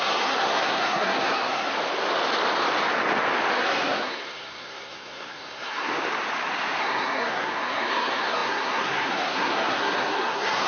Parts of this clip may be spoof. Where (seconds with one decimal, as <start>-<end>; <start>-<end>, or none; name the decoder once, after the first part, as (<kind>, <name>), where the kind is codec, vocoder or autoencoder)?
0.0-1.7 (codec, SNAC); 3.5-5.9; 6.8-10.7

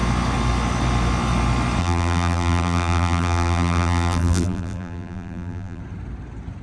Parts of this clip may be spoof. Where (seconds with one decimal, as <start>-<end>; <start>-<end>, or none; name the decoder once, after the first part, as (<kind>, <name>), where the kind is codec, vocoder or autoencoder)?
1.8-5.8 (vocoder, BigVGAN v2)

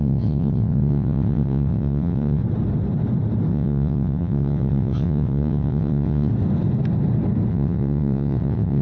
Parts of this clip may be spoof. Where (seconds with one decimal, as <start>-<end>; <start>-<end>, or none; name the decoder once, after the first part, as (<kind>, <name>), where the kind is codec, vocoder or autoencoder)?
0.0-2.4 (vocoder, WaveNeXt); 3.5-6.3; 7.5-8.8

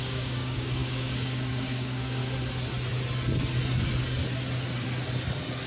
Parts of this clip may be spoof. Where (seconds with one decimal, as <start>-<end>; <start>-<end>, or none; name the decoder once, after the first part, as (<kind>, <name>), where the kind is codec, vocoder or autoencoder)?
0.0-2.2 (codec, DAC)